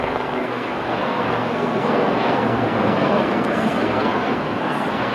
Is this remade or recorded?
remade